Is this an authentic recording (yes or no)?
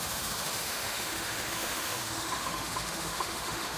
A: no